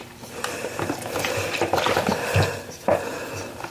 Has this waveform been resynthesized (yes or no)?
yes